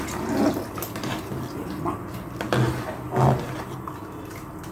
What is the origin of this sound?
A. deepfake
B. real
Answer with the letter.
B